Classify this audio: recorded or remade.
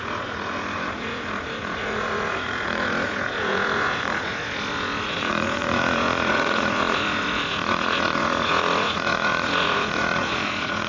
remade